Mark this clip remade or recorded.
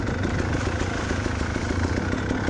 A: recorded